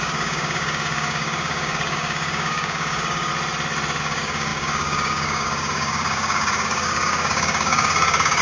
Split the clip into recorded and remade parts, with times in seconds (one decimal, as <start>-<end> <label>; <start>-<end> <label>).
0.0-3.3 remade; 3.3-4.0 recorded; 4.0-8.4 remade